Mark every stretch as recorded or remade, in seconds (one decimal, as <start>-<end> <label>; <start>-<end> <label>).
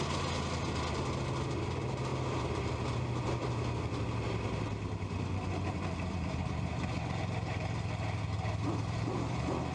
0.0-9.7 recorded